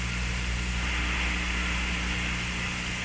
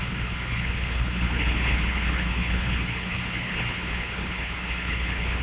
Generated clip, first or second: second